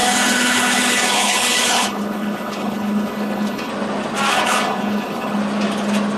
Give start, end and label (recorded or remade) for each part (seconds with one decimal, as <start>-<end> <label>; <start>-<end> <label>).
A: 0.0-3.7 remade; 3.7-4.3 recorded; 4.3-5.4 remade; 5.4-6.2 recorded